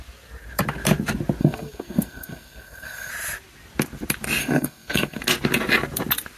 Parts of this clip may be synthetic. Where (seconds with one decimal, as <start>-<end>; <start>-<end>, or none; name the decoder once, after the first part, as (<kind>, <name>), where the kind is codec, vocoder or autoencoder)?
1.4-3.1 (codec, SNAC); 4.4-5.2

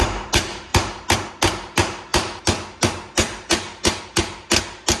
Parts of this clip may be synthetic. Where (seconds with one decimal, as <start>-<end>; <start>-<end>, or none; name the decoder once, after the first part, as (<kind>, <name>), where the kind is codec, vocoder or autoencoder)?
none

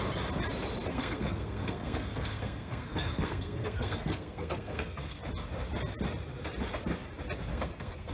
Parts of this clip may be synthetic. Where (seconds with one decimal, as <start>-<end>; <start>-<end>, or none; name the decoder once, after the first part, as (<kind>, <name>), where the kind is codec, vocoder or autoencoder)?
0.9-5.2 (codec, SNAC); 7.5-8.1

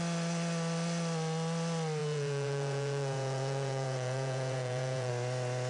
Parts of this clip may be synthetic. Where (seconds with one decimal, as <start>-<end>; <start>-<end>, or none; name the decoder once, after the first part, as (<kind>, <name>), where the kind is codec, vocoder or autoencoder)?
2.0-5.1 (vocoder, Vocos)

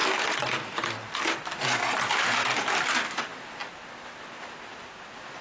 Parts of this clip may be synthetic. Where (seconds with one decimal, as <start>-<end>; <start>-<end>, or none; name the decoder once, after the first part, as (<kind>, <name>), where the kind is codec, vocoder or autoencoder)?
none